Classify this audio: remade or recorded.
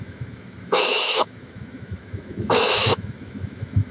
remade